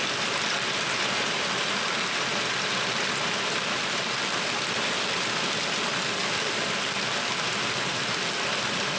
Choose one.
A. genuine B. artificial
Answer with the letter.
A